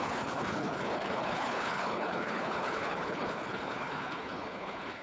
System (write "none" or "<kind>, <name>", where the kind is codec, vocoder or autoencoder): codec, HILCodec